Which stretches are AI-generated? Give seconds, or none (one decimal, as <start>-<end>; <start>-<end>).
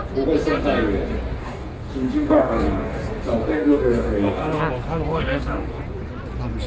1.4-3.1; 3.5-4.6; 5.1-5.8